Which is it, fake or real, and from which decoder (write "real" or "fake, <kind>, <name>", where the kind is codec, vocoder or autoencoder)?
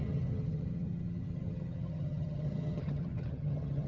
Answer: fake, vocoder, HiFi-GAN